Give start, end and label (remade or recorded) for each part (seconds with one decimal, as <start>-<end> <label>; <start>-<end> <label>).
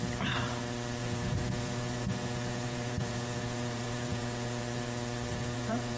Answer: 0.0-1.0 recorded; 1.0-4.6 remade; 4.6-5.3 recorded; 5.3-6.0 remade